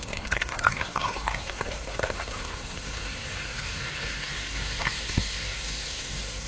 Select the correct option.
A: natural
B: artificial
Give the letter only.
B